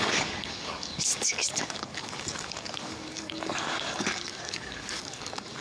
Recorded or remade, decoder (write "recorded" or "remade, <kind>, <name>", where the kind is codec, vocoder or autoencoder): remade, codec, DAC